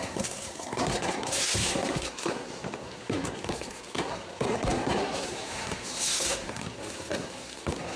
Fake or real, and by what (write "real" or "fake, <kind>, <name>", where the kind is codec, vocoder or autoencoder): fake, codec, SNAC